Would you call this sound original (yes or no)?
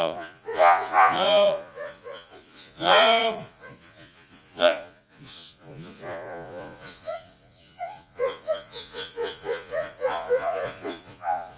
no